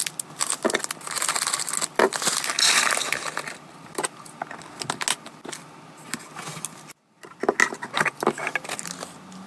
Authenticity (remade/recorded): recorded